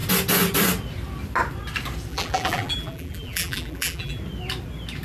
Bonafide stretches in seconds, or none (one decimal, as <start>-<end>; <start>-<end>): 0.0-2.1; 4.2-5.0

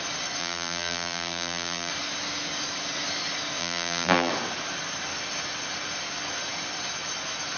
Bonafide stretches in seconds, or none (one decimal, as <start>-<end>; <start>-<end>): 0.0-0.4; 1.9-3.6; 4.3-7.6